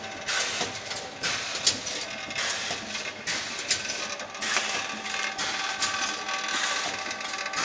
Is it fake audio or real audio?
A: real